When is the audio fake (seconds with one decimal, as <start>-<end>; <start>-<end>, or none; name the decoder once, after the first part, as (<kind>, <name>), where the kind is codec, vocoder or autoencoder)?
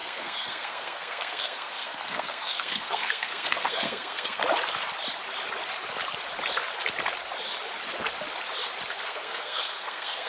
0.0-4.4 (codec, SNAC); 8.9-10.3